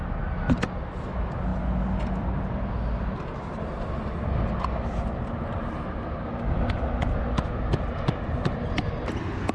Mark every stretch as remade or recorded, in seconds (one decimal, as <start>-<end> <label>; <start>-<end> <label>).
0.0-9.5 recorded